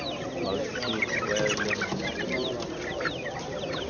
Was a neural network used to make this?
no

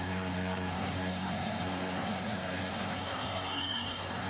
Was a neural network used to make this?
yes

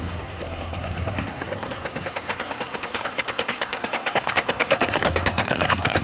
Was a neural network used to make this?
yes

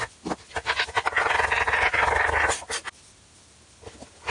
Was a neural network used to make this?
no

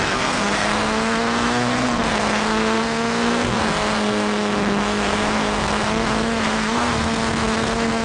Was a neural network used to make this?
yes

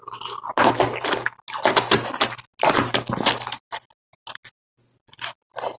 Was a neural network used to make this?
no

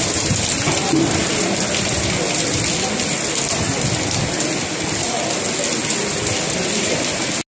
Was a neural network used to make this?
no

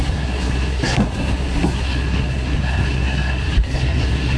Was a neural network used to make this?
yes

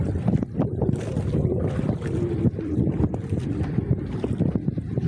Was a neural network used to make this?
no